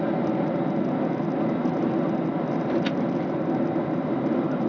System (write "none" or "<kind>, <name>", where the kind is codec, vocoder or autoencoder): none